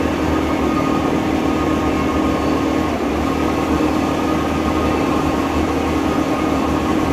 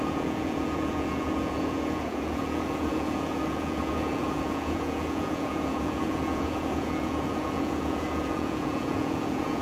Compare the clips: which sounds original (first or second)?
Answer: first